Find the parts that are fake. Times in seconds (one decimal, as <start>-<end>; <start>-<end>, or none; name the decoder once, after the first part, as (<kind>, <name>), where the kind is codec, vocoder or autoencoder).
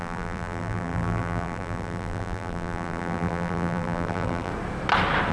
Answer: 0.0-4.5 (vocoder, BigVGAN v2)